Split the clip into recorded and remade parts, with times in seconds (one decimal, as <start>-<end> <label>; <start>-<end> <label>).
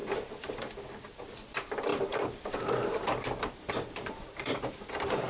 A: 0.0-0.7 remade; 0.7-1.9 recorded; 1.9-5.3 remade